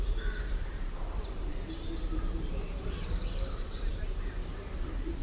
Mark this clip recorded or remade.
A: remade